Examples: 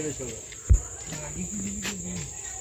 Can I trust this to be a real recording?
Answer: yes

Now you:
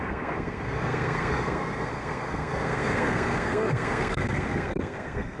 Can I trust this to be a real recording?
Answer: no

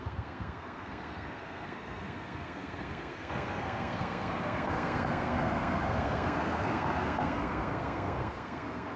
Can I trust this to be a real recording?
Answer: no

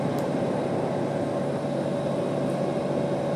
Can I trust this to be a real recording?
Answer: yes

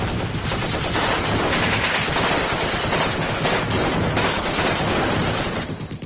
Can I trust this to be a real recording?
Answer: yes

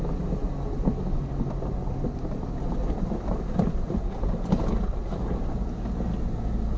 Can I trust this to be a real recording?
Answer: yes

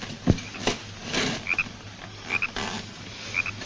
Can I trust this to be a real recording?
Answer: yes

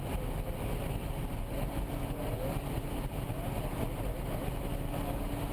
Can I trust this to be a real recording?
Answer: yes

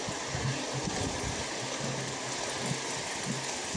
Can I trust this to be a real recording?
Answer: yes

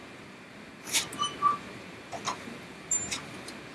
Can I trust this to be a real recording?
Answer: yes